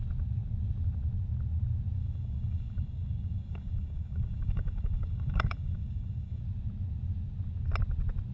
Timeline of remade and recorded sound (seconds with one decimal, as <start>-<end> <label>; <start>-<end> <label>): 0.0-2.0 recorded; 2.0-6.4 remade; 6.4-8.3 recorded